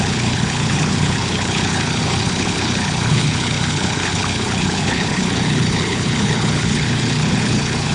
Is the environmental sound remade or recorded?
remade